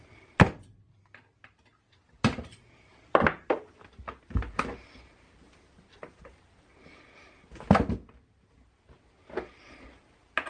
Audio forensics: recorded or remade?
recorded